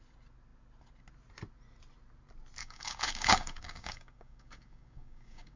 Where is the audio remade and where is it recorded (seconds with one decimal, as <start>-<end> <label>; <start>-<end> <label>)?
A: 0.0-2.6 recorded; 2.6-5.6 remade